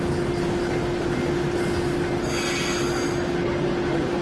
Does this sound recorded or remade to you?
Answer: recorded